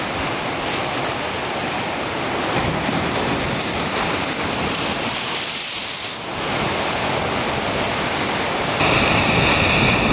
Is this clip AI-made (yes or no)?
no